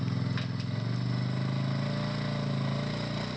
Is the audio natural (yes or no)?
yes